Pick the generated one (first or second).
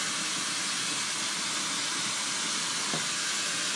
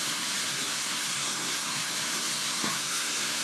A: second